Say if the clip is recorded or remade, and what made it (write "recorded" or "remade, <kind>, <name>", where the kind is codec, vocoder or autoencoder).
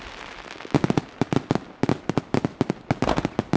recorded